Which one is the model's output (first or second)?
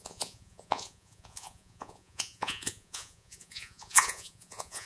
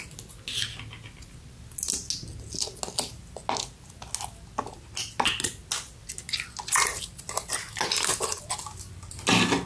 first